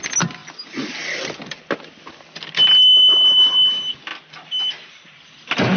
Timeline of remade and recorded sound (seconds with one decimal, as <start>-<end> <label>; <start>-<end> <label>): 0.0-5.8 recorded